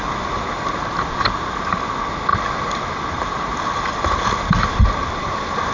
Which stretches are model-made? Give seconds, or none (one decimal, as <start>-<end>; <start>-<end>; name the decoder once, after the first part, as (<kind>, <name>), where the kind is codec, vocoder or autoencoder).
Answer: none